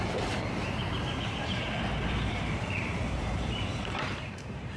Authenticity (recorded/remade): remade